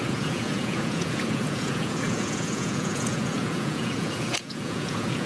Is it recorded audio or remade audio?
remade